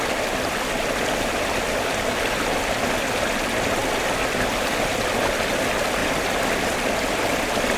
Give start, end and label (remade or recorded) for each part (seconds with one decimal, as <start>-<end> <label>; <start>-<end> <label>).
0.0-7.8 recorded